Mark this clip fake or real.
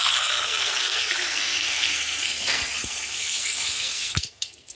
fake